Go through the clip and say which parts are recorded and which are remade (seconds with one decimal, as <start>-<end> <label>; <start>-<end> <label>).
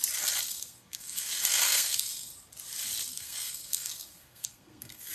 0.0-0.5 recorded; 0.5-2.3 remade; 2.3-3.1 recorded; 3.1-5.1 remade